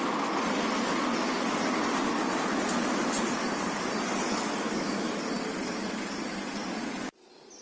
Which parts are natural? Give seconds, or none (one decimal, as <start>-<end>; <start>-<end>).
0.0-4.3; 5.2-7.6